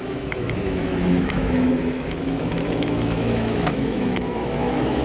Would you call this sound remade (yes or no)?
yes